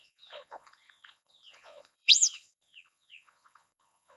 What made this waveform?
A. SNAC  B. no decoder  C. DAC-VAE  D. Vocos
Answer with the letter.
D